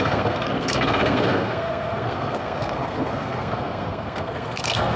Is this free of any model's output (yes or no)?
no